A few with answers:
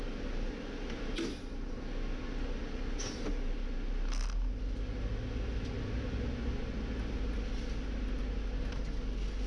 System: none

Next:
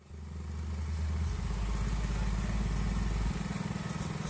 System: none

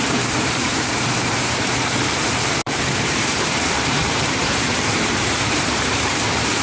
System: vocoder, BigVGAN v2